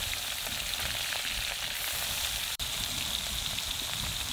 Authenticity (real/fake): fake